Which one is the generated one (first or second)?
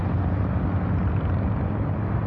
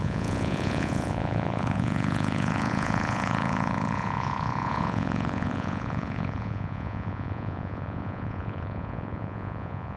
second